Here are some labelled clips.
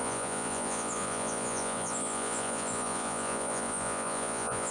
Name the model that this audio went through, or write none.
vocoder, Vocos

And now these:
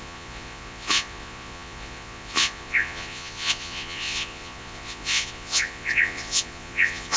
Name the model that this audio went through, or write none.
vocoder, Vocos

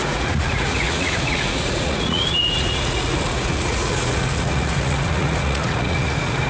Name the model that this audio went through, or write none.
vocoder, Vocos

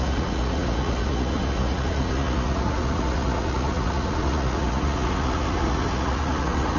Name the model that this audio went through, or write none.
vocoder, Vocos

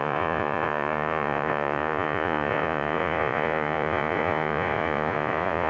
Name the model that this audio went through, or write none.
vocoder, Vocos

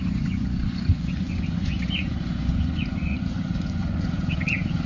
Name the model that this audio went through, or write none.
vocoder, Vocos